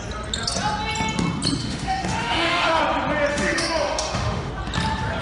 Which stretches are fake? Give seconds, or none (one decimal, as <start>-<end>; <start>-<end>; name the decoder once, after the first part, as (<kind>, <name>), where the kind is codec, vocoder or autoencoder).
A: 1.6-2.8 (autoencoder, DAC-VAE); 3.3-4.5